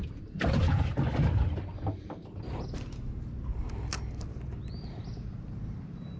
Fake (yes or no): no